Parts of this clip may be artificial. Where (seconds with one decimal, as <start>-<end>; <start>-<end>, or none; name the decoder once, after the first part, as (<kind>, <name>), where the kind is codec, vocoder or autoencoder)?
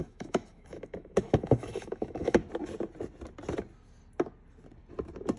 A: 0.0-2.4 (autoencoder, DAC-VAE)